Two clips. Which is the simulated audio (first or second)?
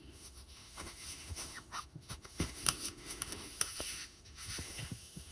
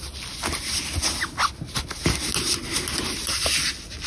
first